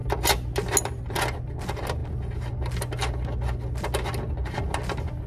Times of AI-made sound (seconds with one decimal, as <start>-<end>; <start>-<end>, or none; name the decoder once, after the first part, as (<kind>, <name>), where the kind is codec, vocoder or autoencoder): none